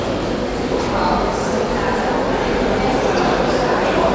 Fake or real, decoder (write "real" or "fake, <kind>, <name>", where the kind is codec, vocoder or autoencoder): real